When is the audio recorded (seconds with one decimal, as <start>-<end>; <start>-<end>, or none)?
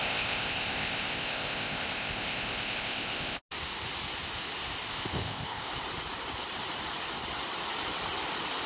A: 3.4-4.9; 5.7-8.7